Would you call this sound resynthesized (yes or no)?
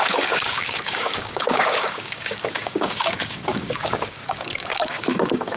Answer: yes